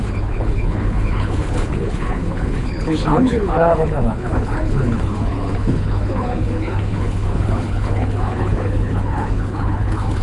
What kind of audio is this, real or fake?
fake